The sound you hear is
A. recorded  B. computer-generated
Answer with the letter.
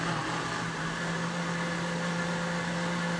A